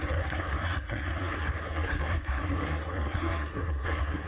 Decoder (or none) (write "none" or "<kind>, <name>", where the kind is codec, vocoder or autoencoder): codec, SNAC